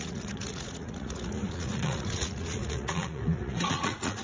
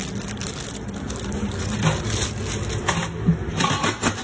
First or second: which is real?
second